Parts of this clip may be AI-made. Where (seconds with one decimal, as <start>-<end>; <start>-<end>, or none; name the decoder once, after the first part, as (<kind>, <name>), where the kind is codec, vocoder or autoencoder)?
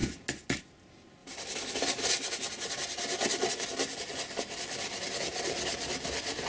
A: none